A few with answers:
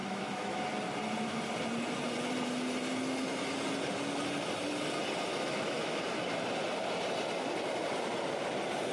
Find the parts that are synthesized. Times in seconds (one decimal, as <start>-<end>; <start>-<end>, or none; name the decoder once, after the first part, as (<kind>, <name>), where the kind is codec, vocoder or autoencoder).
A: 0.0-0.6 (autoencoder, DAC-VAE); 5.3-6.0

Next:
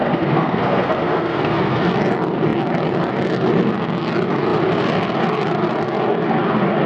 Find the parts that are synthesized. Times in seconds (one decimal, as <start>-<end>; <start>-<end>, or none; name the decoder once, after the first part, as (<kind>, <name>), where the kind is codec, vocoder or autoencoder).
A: 0.0-1.9 (codec, SNAC)

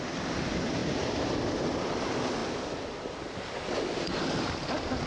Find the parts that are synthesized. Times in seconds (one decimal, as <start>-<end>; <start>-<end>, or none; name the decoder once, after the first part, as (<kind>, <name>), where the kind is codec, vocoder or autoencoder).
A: none

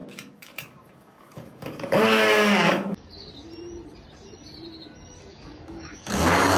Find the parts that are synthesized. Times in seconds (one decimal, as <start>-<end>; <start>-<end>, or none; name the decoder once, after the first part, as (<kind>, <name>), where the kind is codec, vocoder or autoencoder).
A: 0.0-3.3 (codec, DAC); 5.3-6.6

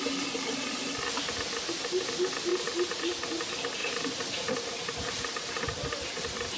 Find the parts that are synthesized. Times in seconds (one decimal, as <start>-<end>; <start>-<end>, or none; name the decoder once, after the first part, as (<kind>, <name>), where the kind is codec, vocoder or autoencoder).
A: none

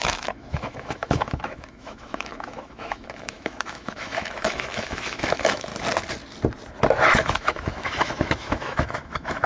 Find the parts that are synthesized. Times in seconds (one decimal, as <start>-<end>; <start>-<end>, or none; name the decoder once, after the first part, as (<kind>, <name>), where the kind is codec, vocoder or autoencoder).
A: 0.0-5.7 (autoencoder, DAC-VAE); 7.0-9.5